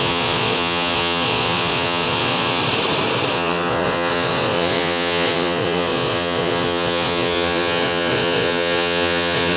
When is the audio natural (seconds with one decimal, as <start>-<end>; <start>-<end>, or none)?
2.6-3.3